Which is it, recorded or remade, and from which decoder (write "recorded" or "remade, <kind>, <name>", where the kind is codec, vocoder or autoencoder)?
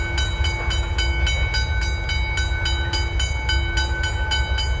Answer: recorded